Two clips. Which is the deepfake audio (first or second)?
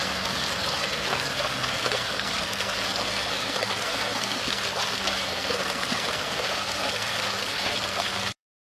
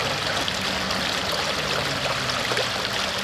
first